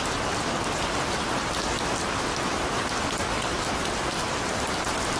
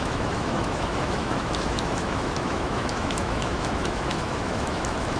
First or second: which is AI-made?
second